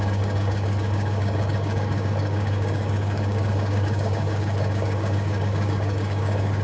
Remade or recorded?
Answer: remade